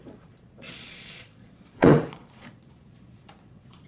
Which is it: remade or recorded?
remade